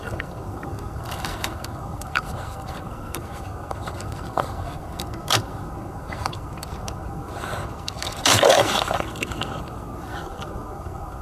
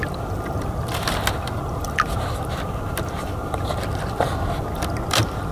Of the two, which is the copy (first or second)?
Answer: first